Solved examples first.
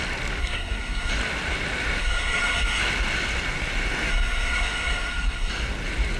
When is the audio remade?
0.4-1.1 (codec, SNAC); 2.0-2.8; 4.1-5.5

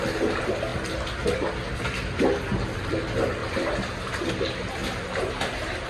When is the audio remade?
3.4-4.3 (vocoder, BigVGAN v2); 4.8-5.5